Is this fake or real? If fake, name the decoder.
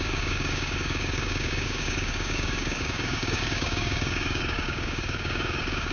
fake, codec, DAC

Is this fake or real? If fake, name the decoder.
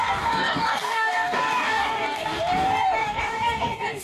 fake, codec, DAC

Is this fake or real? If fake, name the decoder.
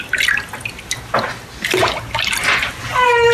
real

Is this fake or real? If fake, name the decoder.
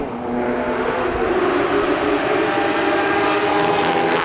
real